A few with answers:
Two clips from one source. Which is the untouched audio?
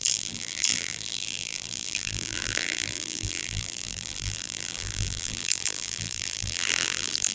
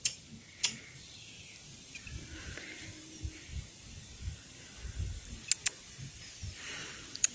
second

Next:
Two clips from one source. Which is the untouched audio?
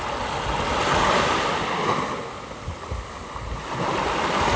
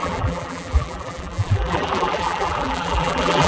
first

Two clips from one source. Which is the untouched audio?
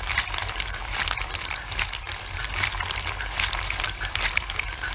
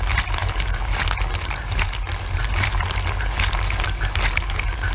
second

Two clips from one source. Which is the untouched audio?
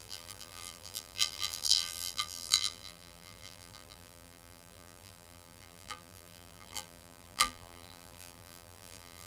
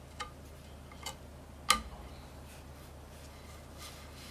second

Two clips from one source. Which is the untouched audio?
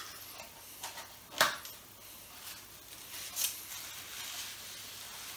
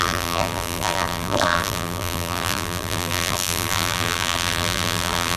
first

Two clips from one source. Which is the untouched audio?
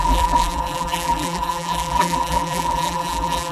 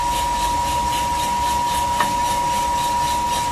second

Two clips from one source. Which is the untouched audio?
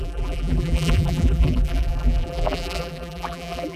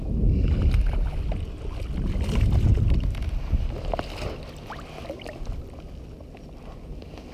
second